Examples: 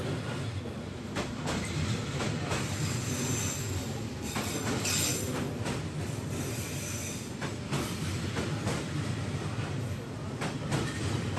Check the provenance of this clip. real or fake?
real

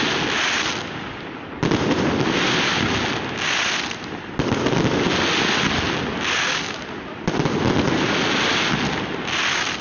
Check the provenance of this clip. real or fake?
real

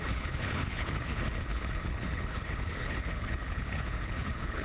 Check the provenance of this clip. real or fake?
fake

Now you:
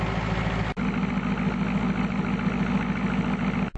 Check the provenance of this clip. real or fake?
real